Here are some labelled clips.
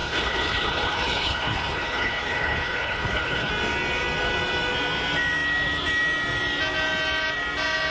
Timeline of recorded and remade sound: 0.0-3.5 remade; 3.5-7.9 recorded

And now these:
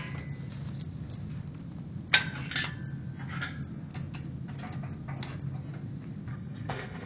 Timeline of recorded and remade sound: 0.0-6.3 recorded; 6.3-7.1 remade